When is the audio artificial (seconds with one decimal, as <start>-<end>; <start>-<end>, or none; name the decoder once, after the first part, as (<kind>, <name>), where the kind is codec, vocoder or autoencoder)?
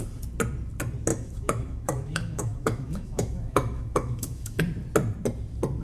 1.1-4.6 (autoencoder, DAC-VAE)